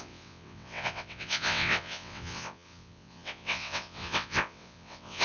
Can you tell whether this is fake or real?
fake